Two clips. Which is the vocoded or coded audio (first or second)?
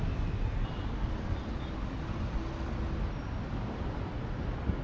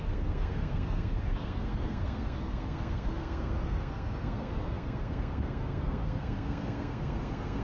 second